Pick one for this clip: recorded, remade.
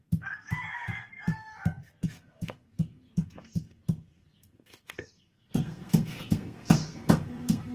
remade